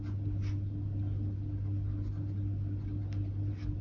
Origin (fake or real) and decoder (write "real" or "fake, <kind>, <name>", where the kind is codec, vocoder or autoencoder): real